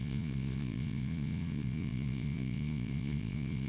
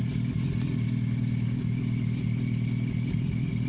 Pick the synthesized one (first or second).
first